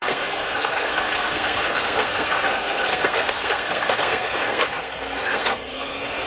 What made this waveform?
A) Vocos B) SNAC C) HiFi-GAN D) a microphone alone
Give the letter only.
B